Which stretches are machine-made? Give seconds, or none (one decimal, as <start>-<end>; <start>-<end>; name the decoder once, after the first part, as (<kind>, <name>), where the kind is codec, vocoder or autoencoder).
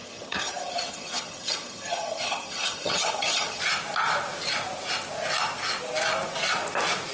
0.0-3.6 (vocoder, HiFi-GAN)